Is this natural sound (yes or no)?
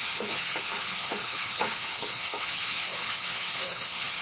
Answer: no